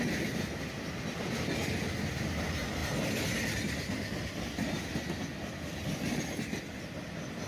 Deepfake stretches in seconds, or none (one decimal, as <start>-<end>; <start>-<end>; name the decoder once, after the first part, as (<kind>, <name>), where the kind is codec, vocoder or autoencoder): none